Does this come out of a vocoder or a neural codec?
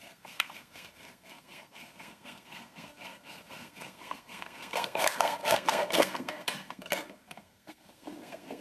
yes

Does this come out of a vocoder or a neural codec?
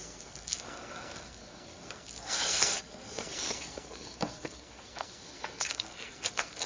yes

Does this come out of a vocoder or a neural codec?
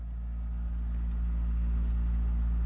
no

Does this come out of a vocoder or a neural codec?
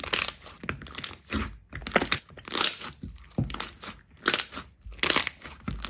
no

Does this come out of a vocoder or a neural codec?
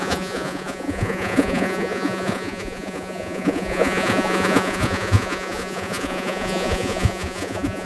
yes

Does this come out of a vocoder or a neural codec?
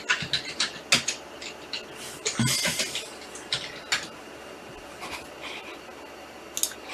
no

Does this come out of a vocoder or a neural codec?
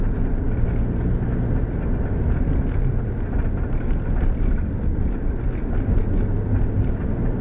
no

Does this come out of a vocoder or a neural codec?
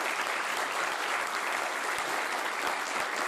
no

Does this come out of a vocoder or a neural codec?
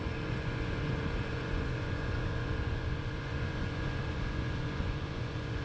yes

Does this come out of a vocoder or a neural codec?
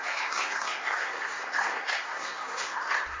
yes